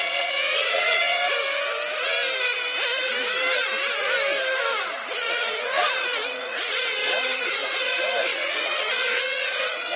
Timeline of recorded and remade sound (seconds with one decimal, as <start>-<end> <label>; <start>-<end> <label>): 0.0-1.2 remade; 1.2-5.0 recorded; 5.0-10.0 remade